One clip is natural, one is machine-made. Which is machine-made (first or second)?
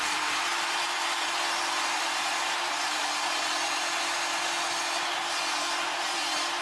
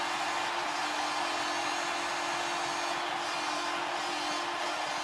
first